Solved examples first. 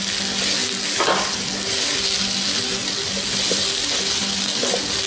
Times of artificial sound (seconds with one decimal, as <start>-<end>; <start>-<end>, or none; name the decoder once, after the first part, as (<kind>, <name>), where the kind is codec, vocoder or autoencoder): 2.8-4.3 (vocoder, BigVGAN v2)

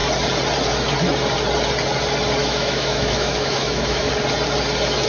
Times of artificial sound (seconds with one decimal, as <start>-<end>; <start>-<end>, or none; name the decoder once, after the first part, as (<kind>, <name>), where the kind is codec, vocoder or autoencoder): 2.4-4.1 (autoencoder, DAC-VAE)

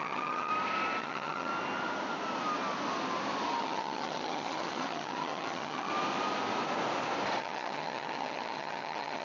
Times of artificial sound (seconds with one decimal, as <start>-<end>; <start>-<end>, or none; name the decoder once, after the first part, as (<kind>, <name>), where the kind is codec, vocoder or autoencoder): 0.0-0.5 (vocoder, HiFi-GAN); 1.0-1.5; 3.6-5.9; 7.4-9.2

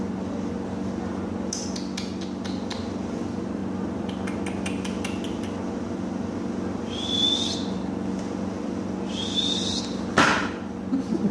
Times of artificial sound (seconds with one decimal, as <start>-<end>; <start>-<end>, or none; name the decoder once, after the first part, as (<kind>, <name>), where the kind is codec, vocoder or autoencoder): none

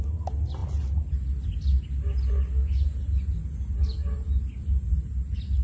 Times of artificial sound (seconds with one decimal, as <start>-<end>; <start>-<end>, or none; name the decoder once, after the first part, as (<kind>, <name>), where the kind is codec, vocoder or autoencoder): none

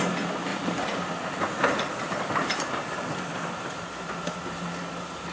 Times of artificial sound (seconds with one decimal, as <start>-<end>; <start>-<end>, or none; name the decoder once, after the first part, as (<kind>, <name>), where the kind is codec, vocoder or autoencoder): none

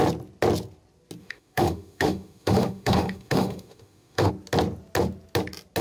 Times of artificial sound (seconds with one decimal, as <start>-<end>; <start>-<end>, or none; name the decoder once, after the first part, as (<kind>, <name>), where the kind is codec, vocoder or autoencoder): 1.2-4.3 (autoencoder, DAC-VAE)

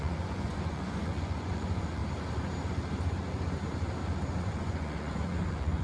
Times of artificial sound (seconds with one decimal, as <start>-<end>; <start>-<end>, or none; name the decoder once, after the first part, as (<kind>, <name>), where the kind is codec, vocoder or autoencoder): 0.0-2.0 (vocoder, Vocos); 4.4-5.8